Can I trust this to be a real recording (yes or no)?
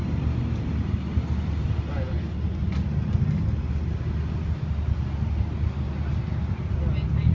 yes